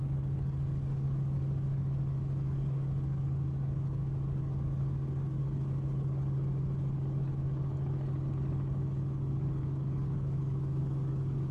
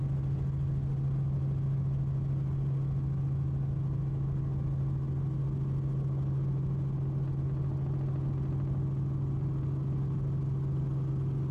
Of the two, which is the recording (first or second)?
second